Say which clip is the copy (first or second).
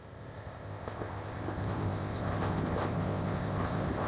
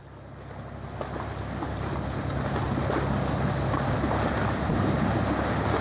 first